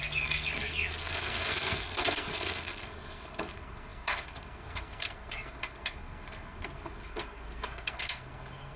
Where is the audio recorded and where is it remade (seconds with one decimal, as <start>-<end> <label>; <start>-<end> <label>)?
0.0-8.8 remade